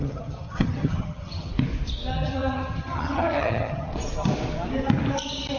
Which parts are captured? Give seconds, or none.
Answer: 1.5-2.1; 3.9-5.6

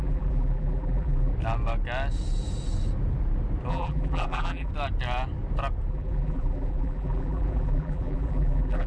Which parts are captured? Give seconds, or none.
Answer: 1.3-3.7; 4.7-5.9

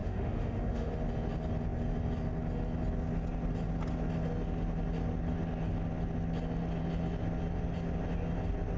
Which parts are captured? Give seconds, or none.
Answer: 0.9-8.8

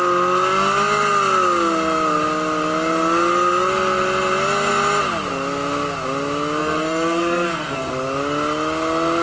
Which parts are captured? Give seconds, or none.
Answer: 0.0-6.6; 7.9-9.2

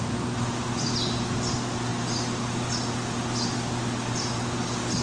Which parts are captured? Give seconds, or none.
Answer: 0.0-5.0

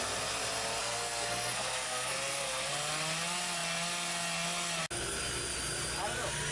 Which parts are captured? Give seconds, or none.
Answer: 0.0-0.8; 2.7-6.5